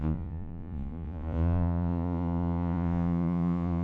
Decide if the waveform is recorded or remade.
remade